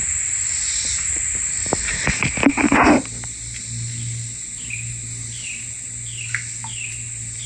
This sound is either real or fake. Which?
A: real